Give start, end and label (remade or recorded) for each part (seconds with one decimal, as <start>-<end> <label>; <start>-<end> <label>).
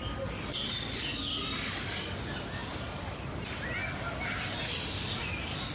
0.0-5.7 recorded